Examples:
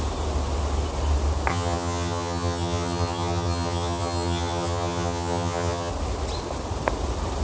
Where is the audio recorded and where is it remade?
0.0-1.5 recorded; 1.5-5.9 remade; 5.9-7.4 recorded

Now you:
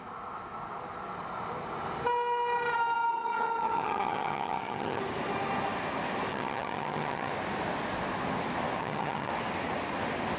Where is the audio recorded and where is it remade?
0.0-3.1 recorded; 3.1-5.0 remade; 5.0-6.3 recorded; 6.3-7.3 remade; 7.3-8.8 recorded; 8.8-9.3 remade; 9.3-10.4 recorded

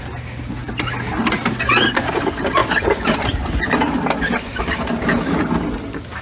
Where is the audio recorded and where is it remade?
0.0-6.2 recorded

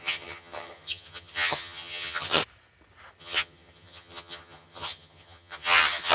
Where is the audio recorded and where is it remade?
0.0-2.4 remade; 2.4-3.2 recorded; 3.2-6.1 remade

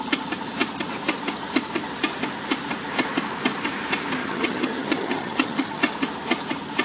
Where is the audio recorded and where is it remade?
0.0-4.2 recorded; 4.2-5.8 remade; 5.8-6.8 recorded

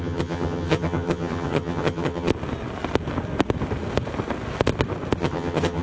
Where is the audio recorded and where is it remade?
0.0-2.3 remade; 2.3-5.2 recorded; 5.2-5.8 remade